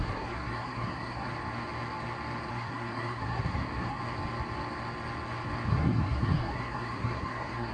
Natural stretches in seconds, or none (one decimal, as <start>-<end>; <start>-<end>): 1.3-2.5; 4.0-5.7